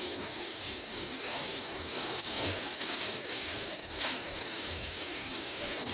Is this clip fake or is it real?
fake